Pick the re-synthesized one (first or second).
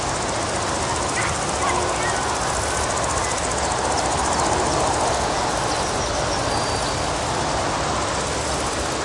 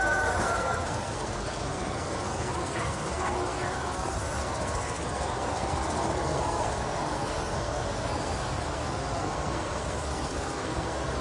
second